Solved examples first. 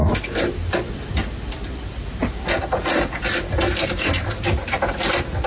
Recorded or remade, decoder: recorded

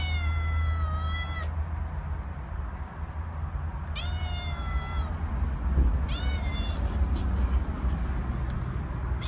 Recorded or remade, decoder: recorded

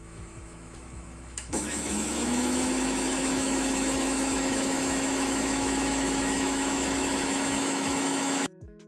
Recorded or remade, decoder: remade, autoencoder, DAC-VAE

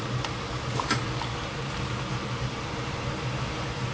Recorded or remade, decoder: recorded